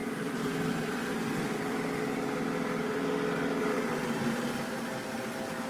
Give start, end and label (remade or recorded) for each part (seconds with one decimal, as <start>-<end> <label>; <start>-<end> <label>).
0.0-0.7 remade; 0.7-5.7 recorded